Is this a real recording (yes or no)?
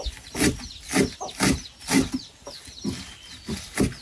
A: yes